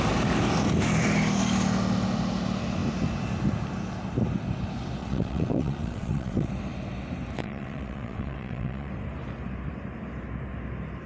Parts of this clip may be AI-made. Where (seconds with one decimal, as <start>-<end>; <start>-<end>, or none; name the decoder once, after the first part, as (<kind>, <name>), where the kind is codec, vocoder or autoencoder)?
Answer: 5.0-6.5 (vocoder, WaveNeXt); 7.4-8.9